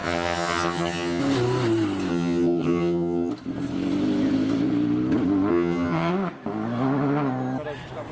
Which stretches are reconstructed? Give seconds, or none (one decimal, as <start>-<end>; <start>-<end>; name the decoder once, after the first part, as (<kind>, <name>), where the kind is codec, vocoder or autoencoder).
0.0-1.2 (vocoder, HiFi-GAN); 2.1-3.3; 5.5-6.1